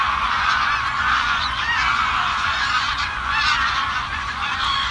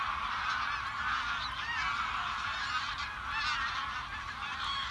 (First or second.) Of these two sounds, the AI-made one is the first